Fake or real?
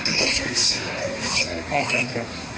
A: fake